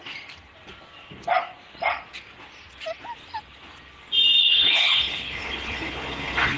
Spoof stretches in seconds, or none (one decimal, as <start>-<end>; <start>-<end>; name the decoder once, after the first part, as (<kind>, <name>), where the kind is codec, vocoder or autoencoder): 4.4-6.6 (codec, HILCodec)